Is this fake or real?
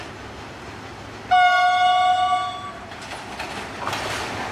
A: real